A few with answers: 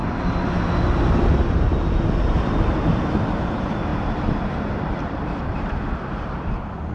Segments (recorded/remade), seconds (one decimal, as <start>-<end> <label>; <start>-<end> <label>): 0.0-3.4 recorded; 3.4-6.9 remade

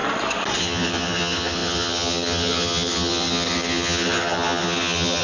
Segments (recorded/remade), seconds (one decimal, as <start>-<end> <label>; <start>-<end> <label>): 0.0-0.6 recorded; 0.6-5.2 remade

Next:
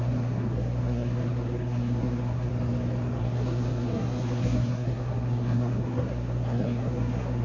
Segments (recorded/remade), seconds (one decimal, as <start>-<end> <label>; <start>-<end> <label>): 0.0-2.5 remade; 2.5-3.2 recorded; 3.2-7.4 remade

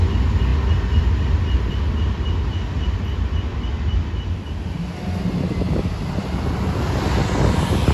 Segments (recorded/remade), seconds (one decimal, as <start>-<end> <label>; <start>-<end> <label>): 0.0-7.9 recorded